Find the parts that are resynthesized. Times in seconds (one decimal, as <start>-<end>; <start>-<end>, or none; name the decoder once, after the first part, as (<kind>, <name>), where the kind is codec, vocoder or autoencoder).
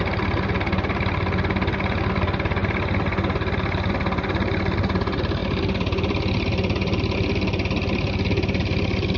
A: none